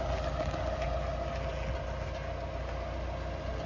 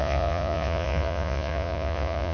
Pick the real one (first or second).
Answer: first